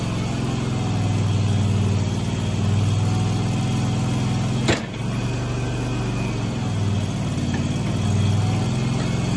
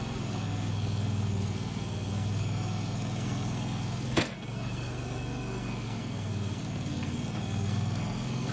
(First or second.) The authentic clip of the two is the first